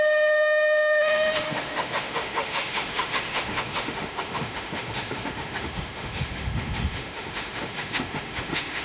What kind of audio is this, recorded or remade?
remade